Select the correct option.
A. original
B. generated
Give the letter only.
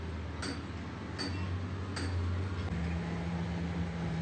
A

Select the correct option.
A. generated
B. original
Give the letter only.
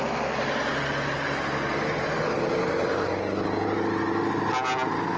B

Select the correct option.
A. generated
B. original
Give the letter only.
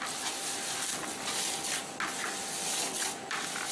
B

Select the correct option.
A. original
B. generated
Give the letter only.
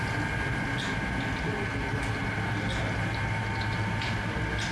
A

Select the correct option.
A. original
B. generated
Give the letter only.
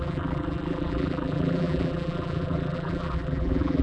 B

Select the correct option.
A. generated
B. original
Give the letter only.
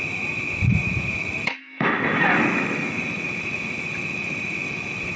A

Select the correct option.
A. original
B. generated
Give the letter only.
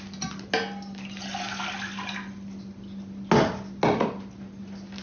A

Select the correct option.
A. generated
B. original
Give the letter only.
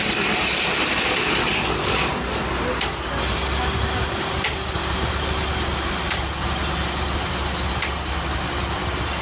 B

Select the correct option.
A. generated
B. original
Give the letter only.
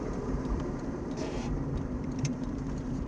A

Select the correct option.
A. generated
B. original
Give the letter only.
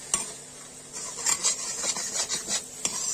B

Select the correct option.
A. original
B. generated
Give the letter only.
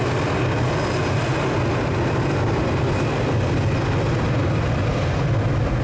A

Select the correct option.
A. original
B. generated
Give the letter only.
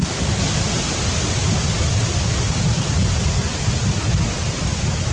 A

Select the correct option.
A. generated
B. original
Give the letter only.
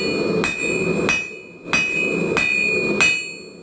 B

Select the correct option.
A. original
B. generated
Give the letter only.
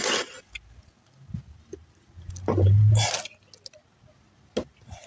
A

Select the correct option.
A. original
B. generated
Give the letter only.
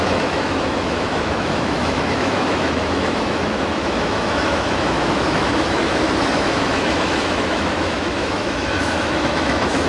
B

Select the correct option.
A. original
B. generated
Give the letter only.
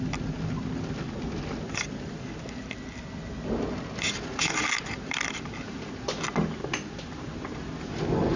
A